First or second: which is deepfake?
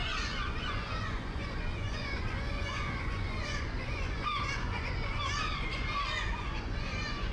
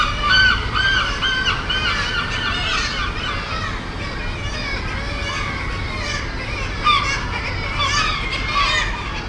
first